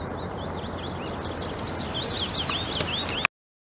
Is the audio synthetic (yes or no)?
no